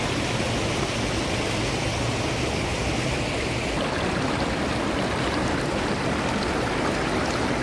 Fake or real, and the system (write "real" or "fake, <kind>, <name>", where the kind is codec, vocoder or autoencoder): real